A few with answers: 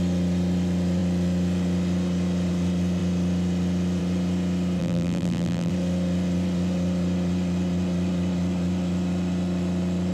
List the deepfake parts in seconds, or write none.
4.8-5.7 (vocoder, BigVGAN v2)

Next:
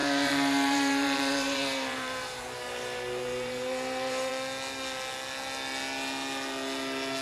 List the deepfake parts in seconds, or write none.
0.0-4.3 (vocoder, BigVGAN v2)

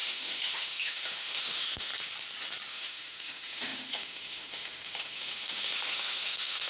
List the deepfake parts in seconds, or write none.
0.0-1.9 (autoencoder, DAC-VAE); 2.7-6.7